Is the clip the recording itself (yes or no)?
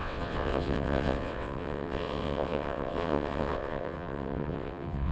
no